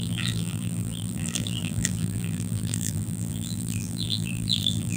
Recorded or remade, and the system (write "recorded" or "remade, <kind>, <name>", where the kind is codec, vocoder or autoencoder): remade, vocoder, BigVGAN v2